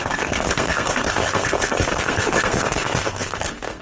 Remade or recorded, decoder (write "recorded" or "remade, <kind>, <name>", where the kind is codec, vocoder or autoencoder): remade, codec, SNAC